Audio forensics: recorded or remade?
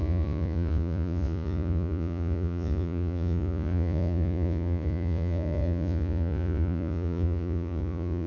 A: remade